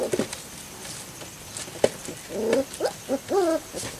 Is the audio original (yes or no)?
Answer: yes